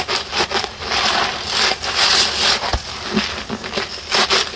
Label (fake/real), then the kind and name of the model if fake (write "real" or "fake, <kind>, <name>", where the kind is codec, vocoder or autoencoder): real